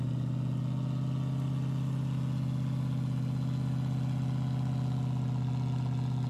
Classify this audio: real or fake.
real